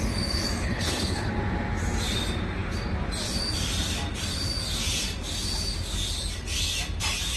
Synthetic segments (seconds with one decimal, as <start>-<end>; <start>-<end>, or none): 0.6-1.3